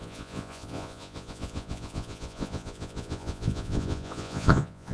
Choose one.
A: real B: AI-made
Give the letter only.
B